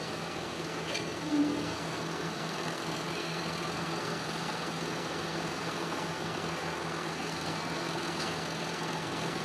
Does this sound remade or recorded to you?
remade